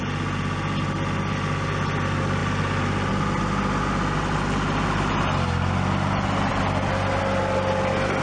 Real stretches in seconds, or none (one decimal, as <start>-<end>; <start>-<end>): 0.0-8.2